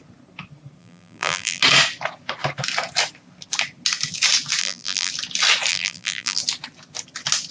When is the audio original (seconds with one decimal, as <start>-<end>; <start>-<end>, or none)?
0.0-0.8; 1.6-4.6; 5.1-5.7; 6.4-7.5